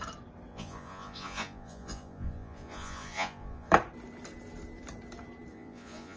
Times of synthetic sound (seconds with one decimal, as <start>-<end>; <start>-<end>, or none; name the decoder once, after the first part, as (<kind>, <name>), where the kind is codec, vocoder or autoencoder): 0.5-3.7 (vocoder, Vocos); 5.5-6.2